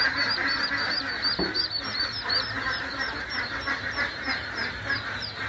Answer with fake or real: real